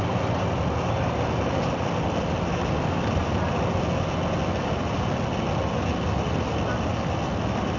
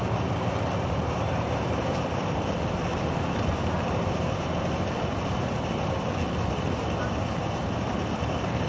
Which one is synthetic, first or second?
second